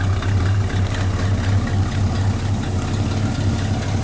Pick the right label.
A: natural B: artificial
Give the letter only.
A